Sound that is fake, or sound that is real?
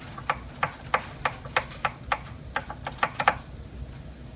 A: real